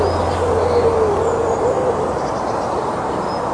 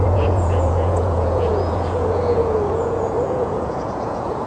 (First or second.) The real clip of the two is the first